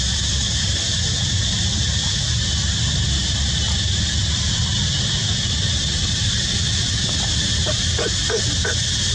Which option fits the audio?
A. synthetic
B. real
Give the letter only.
B